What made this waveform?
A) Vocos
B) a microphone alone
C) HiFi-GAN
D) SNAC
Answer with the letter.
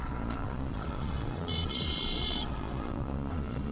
A